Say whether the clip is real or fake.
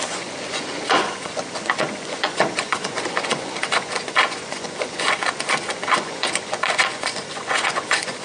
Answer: fake